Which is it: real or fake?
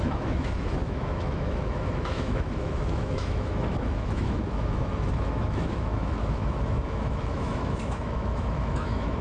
fake